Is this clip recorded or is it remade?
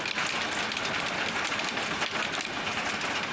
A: recorded